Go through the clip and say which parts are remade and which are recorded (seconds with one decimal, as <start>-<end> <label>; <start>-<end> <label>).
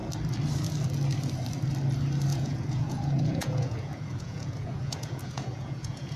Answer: 0.0-2.3 recorded; 2.3-6.2 remade